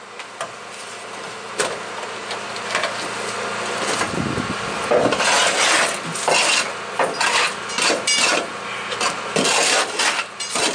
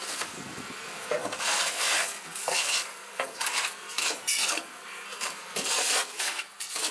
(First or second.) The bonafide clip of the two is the first